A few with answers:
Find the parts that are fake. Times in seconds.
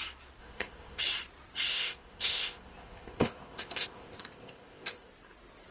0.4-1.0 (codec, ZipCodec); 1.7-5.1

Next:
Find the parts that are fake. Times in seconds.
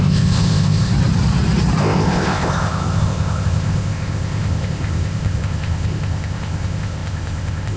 0.0-0.9 (codec, ZipCodec); 1.8-7.8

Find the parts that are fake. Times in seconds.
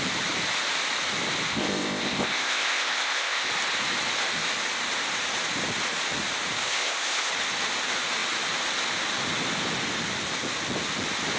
1.5-3.5 (codec, ZipCodec); 6.6-7.3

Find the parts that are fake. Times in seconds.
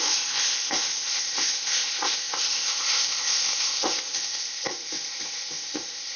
0.0-6.2 (codec, ZipCodec)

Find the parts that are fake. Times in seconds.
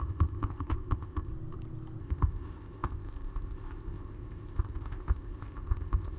0.0-1.3 (codec, ZipCodec); 2.0-6.2